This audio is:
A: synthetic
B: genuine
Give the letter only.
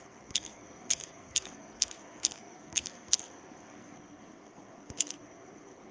A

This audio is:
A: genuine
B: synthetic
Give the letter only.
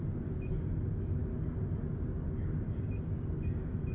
A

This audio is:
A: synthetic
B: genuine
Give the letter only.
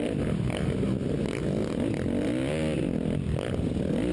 B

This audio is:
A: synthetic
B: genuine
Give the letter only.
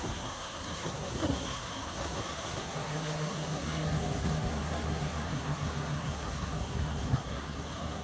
A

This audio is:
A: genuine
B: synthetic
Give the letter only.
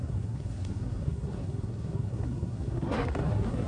B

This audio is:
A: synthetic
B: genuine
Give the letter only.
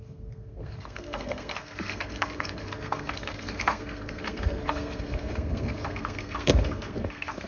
A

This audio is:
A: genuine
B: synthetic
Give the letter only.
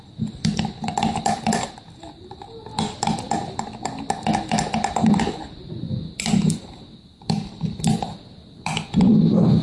A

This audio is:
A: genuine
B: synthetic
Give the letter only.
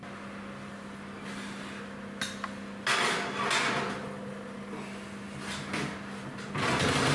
A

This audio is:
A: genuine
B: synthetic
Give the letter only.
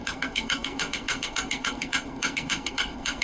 B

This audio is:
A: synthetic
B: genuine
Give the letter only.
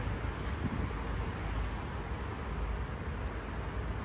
B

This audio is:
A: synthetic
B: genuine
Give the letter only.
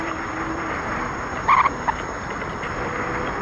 B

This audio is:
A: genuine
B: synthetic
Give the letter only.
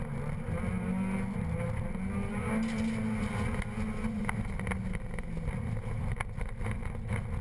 A